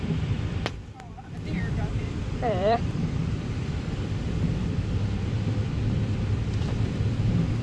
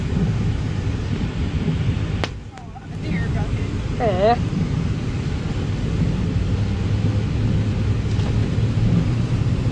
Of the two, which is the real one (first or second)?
second